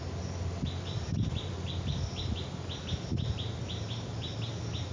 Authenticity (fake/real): real